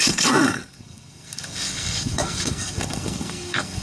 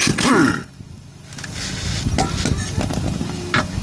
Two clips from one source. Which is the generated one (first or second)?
first